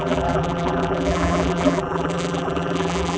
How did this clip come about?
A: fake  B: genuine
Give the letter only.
A